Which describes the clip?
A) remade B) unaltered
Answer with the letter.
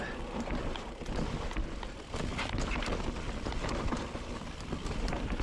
B